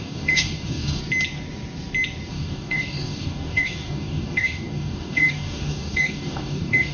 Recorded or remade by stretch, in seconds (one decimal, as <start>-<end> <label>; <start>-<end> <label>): 0.0-1.0 remade; 1.0-2.3 recorded; 2.3-6.9 remade